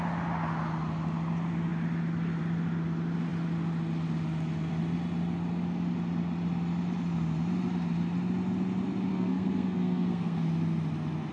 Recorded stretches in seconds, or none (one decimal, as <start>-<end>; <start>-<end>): 0.0-9.1; 10.4-11.3